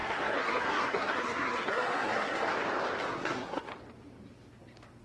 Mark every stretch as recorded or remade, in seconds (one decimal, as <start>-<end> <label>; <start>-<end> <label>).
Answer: 0.0-2.5 remade; 2.5-3.1 recorded; 3.1-3.7 remade; 3.7-5.0 recorded